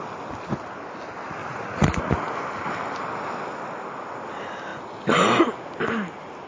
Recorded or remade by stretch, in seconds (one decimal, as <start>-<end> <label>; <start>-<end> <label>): 0.0-1.4 recorded; 1.4-2.3 remade; 2.3-6.5 recorded